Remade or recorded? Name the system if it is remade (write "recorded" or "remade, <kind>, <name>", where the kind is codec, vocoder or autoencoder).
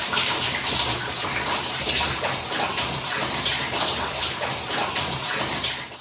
remade, vocoder, BigVGAN v2